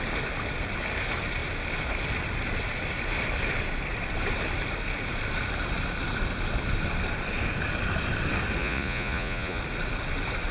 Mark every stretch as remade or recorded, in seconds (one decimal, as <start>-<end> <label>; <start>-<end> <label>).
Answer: 0.0-8.6 recorded; 8.6-9.6 remade; 9.6-10.5 recorded